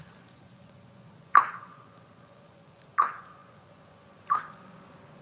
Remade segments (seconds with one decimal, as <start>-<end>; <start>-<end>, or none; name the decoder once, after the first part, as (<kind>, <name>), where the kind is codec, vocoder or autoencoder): 0.0-5.2 (vocoder, Vocos)